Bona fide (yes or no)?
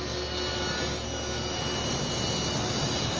yes